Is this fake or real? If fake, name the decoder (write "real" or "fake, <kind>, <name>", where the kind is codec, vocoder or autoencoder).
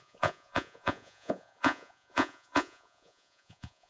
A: fake, vocoder, Vocos